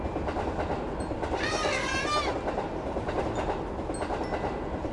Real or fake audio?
real